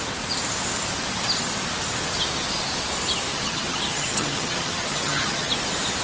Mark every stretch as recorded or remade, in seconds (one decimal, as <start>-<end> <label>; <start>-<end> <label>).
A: 0.0-3.3 recorded; 3.3-5.5 remade; 5.5-6.0 recorded